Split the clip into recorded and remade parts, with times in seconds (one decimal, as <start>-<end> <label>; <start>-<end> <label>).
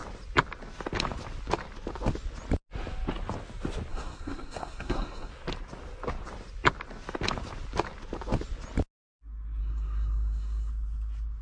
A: 0.0-3.9 recorded; 3.9-5.3 remade; 5.3-9.6 recorded; 9.6-10.7 remade; 10.7-11.4 recorded